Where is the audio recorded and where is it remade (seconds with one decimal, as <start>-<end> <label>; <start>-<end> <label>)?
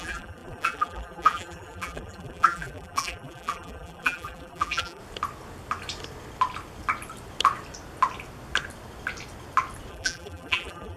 0.0-5.0 remade; 5.0-9.9 recorded; 9.9-11.0 remade